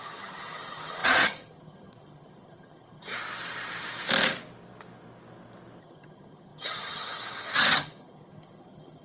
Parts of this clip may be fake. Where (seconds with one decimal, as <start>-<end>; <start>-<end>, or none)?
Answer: 0.0-3.1; 5.8-9.0